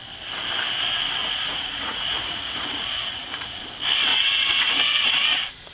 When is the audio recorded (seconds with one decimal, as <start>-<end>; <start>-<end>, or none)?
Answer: 0.0-1.2; 3.5-4.1; 5.1-5.7